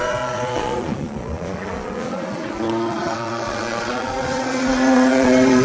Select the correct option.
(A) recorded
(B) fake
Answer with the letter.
B